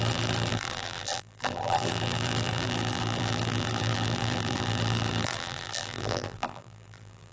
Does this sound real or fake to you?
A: fake